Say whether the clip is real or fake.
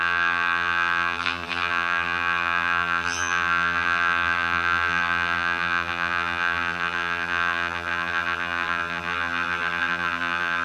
fake